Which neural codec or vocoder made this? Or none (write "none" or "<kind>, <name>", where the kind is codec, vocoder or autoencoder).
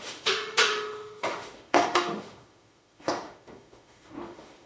autoencoder, DAC-VAE